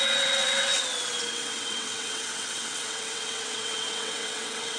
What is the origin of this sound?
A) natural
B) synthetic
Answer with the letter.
B